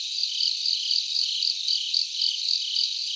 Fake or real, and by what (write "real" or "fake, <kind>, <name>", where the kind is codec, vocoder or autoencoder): real